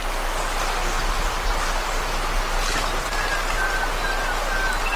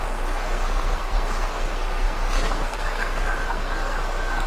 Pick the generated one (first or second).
second